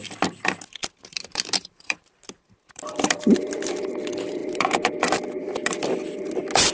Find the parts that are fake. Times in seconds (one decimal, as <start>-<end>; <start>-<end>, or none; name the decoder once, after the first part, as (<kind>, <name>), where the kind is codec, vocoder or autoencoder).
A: 0.8-3.9 (vocoder, BigVGAN v2); 4.4-4.9